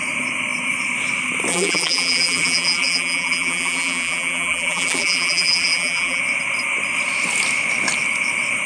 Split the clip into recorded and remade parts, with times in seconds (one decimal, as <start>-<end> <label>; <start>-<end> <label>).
0.0-1.5 recorded; 1.5-6.2 remade; 6.2-8.7 recorded